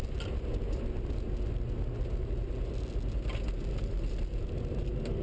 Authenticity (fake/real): real